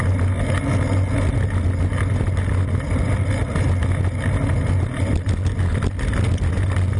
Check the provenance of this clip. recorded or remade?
recorded